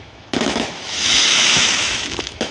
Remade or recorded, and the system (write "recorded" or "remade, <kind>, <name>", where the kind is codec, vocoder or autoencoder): remade, autoencoder, DAC-VAE